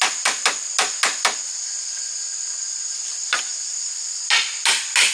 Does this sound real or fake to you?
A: real